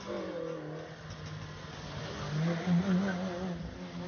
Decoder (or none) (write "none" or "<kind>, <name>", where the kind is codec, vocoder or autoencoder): none